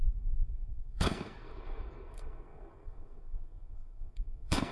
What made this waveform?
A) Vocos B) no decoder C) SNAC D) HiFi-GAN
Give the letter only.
C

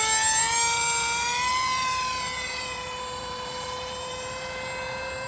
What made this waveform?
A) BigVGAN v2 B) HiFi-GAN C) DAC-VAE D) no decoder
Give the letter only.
A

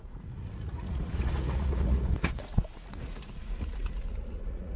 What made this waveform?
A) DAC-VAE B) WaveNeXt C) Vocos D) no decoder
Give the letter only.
C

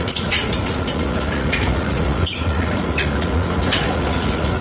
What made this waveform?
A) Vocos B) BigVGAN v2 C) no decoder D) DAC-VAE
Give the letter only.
A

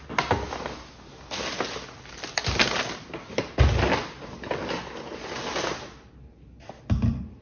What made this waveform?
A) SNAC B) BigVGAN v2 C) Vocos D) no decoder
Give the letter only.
D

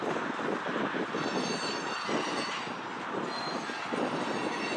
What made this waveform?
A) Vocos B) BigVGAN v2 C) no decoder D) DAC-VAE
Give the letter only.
C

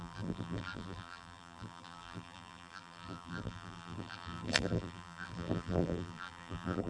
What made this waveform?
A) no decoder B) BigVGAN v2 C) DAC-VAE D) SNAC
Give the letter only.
B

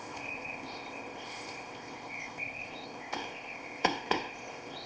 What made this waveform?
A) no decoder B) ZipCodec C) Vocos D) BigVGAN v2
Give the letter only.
B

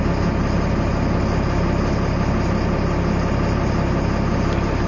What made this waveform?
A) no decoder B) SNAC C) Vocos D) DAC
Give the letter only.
A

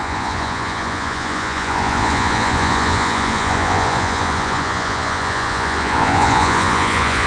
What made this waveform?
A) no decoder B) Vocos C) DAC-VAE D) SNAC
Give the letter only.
B